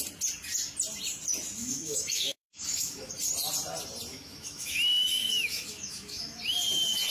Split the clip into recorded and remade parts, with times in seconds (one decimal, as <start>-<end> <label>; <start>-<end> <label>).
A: 0.0-1.6 recorded; 1.6-3.1 remade; 3.1-4.1 recorded; 4.1-6.4 remade; 6.4-7.1 recorded